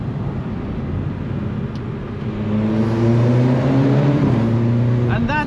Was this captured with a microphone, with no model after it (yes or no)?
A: yes